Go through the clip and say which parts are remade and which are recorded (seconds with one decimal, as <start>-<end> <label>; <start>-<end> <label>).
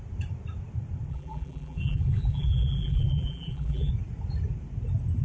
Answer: 0.0-1.1 recorded; 1.1-3.9 remade; 3.9-5.2 recorded